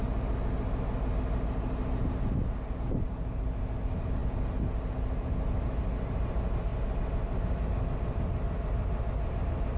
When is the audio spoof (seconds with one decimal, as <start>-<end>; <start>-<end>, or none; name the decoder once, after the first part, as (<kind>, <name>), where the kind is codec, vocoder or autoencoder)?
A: none